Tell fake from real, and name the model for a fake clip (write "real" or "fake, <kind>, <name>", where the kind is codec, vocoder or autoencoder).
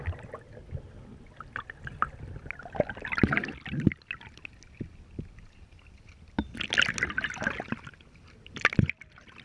real